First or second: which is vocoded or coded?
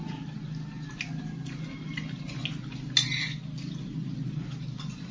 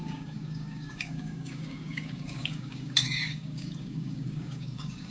second